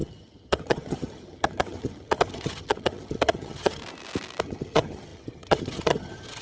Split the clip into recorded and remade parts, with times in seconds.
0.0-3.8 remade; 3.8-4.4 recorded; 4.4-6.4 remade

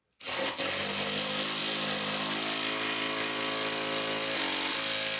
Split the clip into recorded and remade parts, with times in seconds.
0.0-5.2 recorded

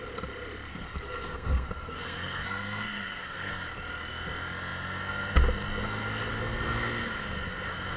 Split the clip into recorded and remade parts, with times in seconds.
0.0-0.7 recorded; 0.7-3.5 remade; 3.5-8.0 recorded

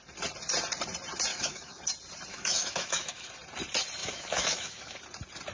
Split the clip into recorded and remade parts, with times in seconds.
0.0-1.3 recorded; 1.3-1.8 remade; 1.8-2.3 recorded; 2.3-3.3 remade; 3.3-4.0 recorded; 4.0-5.0 remade; 5.0-5.5 recorded